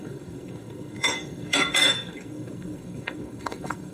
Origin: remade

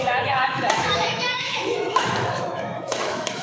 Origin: remade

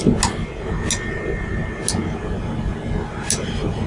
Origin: recorded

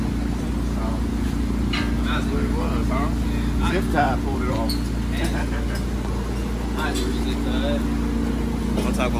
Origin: recorded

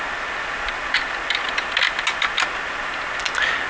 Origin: recorded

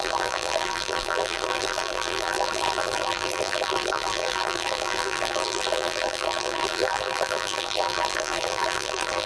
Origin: remade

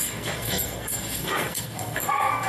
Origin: remade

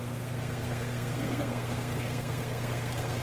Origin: remade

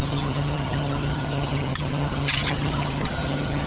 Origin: remade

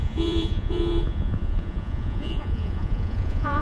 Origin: remade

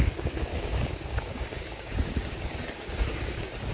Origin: remade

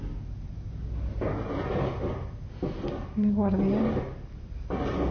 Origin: recorded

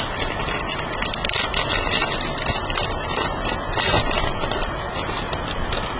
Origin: recorded